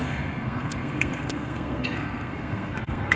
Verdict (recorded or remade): remade